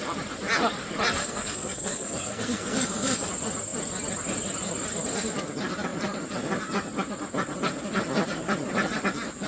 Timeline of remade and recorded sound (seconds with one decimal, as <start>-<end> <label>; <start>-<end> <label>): 0.0-1.2 recorded; 1.2-3.3 remade; 3.3-9.5 recorded